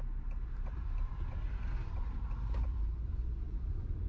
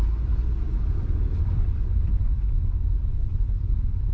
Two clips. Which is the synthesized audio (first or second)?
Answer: first